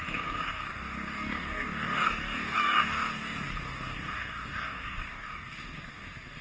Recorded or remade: remade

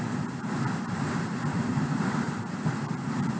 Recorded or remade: remade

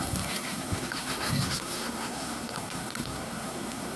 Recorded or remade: remade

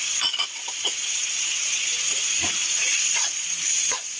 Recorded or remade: remade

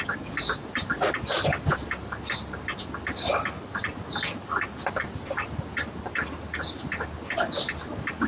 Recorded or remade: recorded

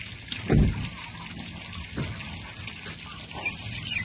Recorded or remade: recorded